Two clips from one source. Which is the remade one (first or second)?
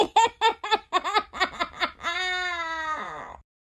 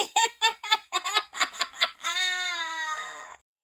second